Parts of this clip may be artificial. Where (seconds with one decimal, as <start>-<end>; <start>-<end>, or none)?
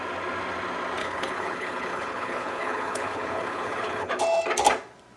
1.0-4.1